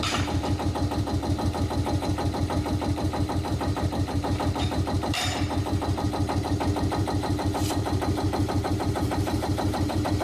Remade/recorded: remade